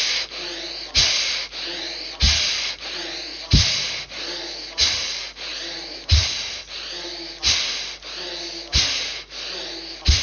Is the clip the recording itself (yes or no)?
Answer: yes